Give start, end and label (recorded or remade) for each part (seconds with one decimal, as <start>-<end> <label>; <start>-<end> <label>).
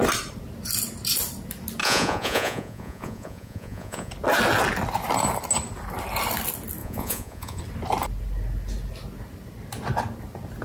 0.0-1.8 recorded; 1.8-4.1 remade; 4.1-6.8 recorded; 6.8-7.6 remade; 7.6-10.6 recorded